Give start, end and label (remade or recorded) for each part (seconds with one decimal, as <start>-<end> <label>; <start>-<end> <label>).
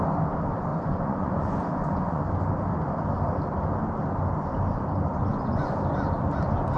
0.0-0.7 recorded; 0.7-2.2 remade; 2.2-5.3 recorded; 5.3-5.8 remade; 5.8-6.8 recorded